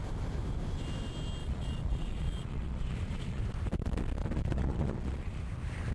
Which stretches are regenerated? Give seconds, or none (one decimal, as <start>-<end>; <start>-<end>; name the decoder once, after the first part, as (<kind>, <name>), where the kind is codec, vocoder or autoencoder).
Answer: 1.4-3.4 (vocoder, Vocos); 4.2-5.4

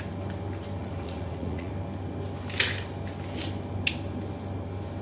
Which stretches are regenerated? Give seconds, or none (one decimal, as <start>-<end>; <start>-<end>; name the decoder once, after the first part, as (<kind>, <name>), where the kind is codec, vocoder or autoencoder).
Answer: 0.8-1.7 (vocoder, Vocos)